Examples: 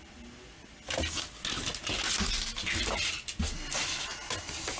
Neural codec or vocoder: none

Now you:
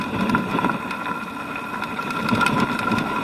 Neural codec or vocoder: none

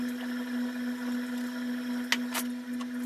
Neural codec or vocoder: none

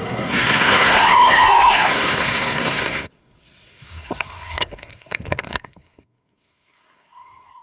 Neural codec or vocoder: codec, SNAC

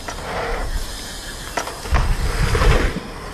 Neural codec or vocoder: vocoder, BigVGAN v2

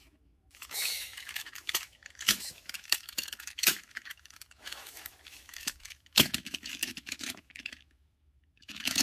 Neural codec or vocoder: autoencoder, DAC-VAE